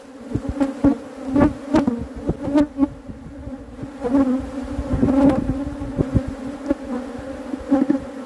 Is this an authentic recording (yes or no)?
yes